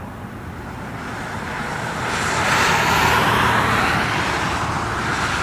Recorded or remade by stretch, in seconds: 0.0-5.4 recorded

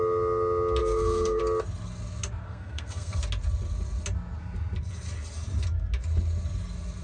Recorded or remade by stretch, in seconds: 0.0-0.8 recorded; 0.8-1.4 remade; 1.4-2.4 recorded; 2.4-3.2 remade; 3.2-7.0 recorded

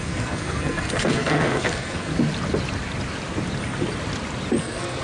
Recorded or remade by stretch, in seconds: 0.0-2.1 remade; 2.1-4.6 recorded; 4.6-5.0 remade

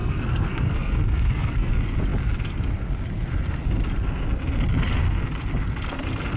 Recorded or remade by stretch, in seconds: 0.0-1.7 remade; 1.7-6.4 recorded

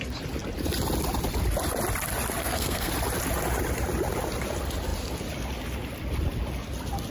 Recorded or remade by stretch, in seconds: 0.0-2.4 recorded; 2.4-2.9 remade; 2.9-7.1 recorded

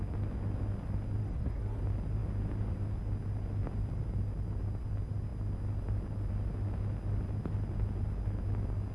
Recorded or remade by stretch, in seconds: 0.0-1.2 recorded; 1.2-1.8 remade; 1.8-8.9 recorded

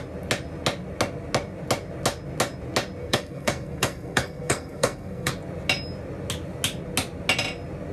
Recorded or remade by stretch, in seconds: 0.0-3.0 recorded; 3.0-5.3 remade; 5.3-7.9 recorded

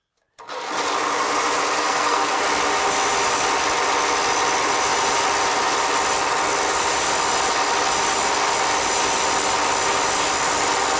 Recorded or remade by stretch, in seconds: 0.0-1.8 recorded; 1.8-2.4 remade; 2.4-11.0 recorded